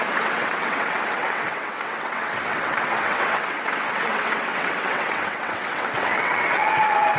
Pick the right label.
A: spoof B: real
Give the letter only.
A